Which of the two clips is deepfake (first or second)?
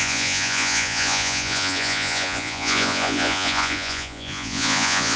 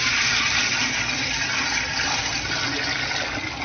first